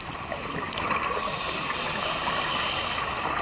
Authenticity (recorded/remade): recorded